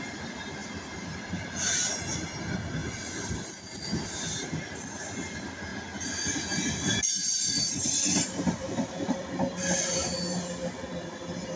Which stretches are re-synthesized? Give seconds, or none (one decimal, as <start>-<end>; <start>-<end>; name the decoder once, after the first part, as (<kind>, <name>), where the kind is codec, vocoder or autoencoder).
none